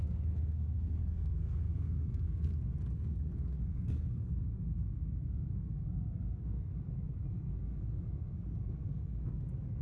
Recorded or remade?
remade